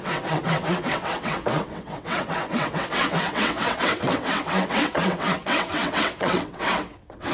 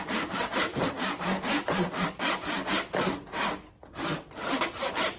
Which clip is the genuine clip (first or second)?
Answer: second